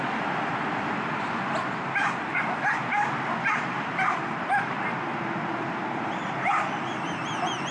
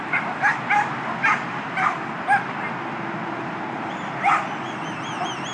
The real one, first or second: second